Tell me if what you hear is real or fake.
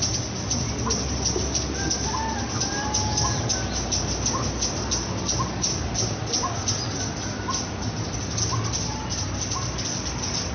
real